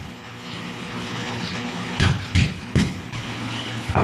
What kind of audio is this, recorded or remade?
remade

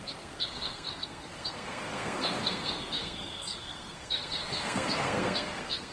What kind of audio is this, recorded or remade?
remade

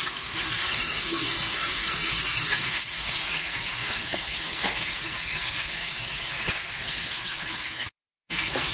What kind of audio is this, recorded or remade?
remade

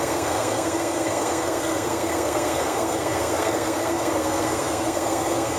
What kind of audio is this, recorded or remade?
remade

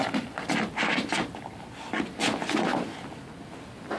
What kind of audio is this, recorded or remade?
recorded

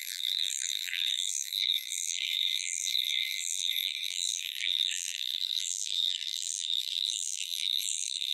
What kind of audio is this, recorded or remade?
remade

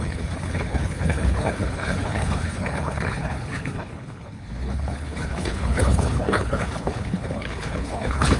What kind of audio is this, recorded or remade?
remade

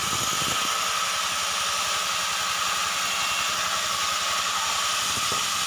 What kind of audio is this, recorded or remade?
recorded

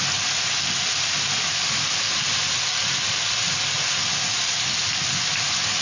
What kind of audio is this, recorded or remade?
recorded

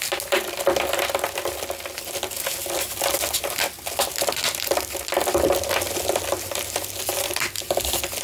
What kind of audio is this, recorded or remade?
recorded